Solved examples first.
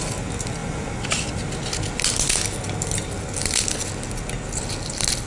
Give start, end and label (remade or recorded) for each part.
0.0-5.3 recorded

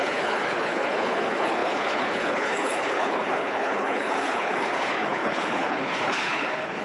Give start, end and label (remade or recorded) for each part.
0.0-6.8 remade